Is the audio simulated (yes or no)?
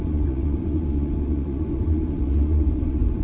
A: yes